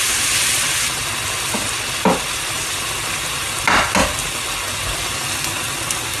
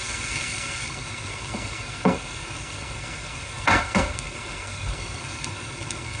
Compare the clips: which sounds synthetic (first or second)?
second